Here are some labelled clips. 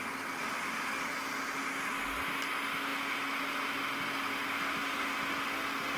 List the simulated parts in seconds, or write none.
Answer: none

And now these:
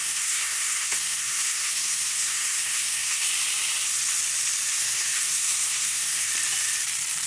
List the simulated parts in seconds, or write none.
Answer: 0.0-3.3 (codec, SNAC); 4.7-6.3

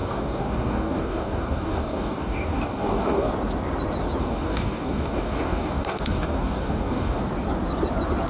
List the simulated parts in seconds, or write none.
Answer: 0.0-3.3 (codec, DAC); 4.2-7.2

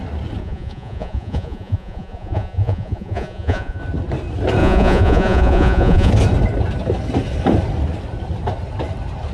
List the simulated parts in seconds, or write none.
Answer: 0.4-3.8 (vocoder, Vocos); 4.6-6.1

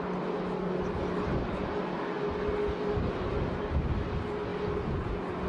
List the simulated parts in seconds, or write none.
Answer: none

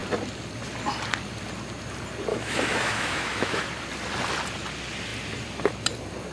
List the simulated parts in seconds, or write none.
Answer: 2.3-3.6 (autoencoder, DAC-VAE)

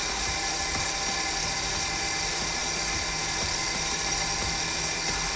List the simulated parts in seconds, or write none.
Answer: none